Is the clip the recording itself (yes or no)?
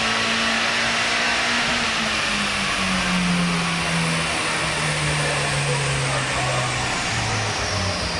yes